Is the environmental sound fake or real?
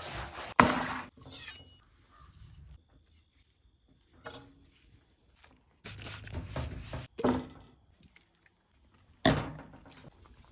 real